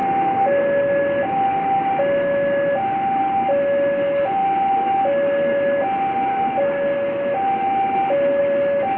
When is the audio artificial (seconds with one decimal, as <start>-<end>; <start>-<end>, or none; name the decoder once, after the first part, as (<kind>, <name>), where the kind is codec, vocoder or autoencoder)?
none